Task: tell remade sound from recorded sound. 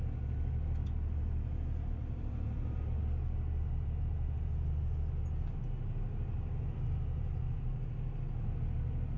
recorded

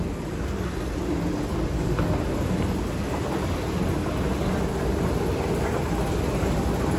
recorded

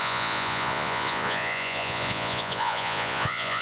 remade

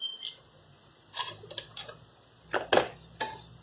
recorded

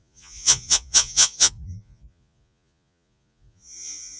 remade